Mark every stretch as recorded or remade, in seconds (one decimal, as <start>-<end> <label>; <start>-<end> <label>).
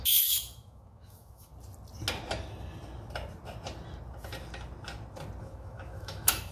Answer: 0.0-1.5 remade; 1.5-5.4 recorded; 5.4-6.5 remade